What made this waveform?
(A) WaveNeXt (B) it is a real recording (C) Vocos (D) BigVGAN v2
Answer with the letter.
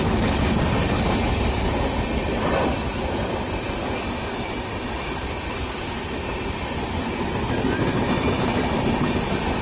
B